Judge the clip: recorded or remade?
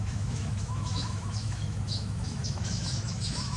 remade